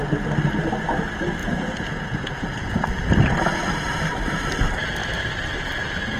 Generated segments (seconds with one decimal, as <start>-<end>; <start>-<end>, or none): 1.4-2.9